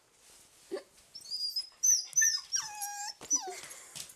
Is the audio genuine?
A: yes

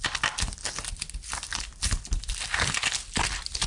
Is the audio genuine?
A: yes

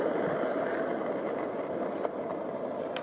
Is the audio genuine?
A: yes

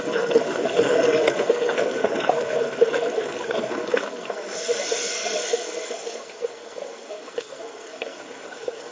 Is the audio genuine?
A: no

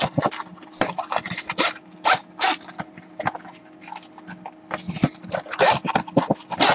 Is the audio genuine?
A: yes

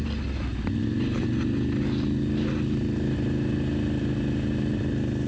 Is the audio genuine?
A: yes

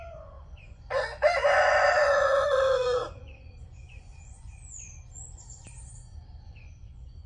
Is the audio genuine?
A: no